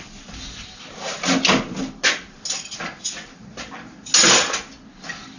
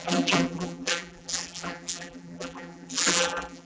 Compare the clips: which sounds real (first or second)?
first